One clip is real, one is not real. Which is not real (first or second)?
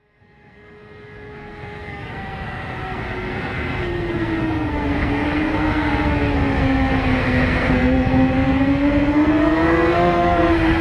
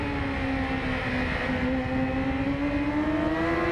first